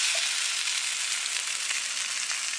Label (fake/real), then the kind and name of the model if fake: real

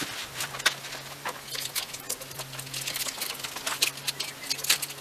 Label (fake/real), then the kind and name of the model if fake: real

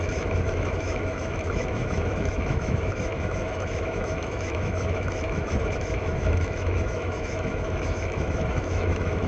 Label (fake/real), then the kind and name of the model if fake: fake, autoencoder, DAC-VAE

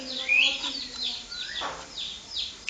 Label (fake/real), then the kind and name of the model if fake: real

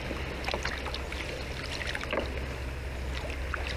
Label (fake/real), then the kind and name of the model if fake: real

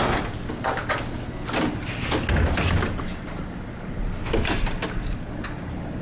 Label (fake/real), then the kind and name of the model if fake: real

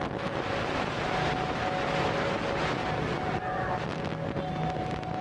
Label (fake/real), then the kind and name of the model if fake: real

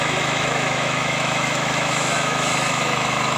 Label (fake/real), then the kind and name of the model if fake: fake, autoencoder, DAC-VAE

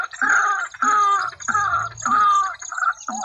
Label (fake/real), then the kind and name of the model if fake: real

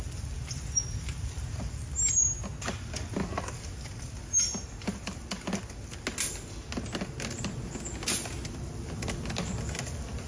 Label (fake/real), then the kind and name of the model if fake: real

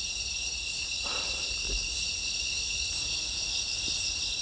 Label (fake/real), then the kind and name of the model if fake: real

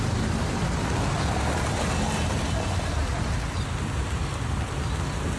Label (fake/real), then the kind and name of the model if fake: real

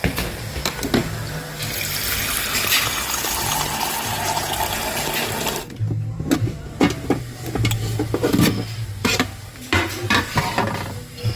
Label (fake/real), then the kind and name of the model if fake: real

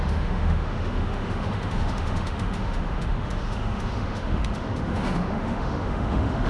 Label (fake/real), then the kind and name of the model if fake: fake, autoencoder, DAC-VAE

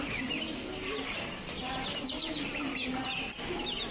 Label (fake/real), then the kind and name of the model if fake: real